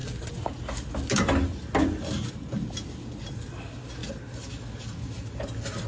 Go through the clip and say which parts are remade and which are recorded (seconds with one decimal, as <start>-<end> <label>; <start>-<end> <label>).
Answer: 0.0-5.9 recorded